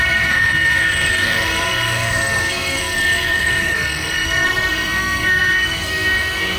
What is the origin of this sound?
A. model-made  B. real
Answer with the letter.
A